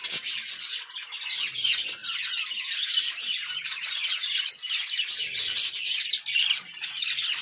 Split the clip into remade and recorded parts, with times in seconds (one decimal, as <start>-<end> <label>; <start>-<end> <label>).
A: 0.0-7.4 recorded